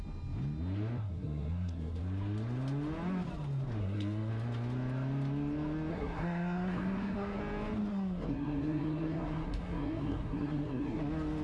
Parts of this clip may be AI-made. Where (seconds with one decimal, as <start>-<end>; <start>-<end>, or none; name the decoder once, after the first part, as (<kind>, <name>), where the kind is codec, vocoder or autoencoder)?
1.0-2.0 (codec, SNAC); 3.8-4.3; 5.9-7.4; 7.9-11.0